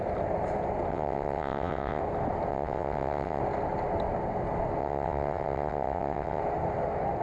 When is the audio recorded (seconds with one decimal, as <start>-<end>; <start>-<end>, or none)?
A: 0.0-0.9; 2.0-2.5; 3.4-4.8; 6.4-7.2